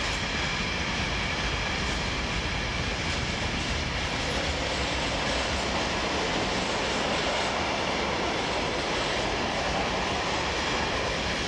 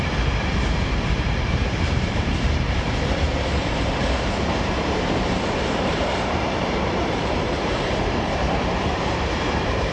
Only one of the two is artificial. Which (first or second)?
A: second